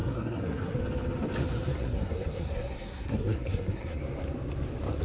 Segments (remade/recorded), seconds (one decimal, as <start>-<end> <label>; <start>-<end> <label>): 0.0-0.8 remade; 0.8-1.7 recorded; 1.7-4.0 remade; 4.0-5.0 recorded